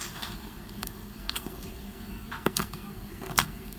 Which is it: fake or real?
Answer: fake